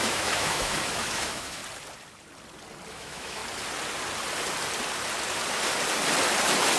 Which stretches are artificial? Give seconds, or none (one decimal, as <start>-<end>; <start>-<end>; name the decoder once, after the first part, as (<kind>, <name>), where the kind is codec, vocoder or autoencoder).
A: 0.0-1.6 (autoencoder, DAC-VAE); 2.9-3.4